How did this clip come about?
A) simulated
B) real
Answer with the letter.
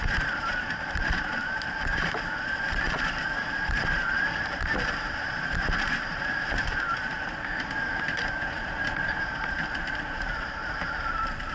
A